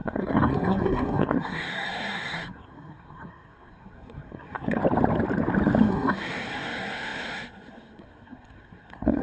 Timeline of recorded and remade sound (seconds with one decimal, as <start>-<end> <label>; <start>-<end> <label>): 0.0-4.8 remade; 4.8-5.8 recorded; 5.8-9.2 remade